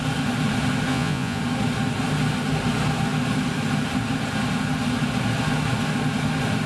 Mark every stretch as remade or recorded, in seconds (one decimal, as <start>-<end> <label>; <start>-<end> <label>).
0.0-0.9 recorded; 0.9-1.4 remade; 1.4-6.7 recorded